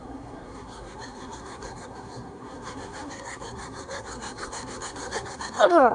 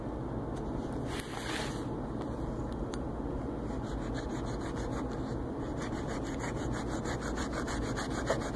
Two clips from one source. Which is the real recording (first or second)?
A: second